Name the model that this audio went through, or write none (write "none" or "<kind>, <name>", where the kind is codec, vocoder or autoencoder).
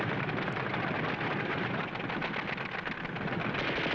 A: none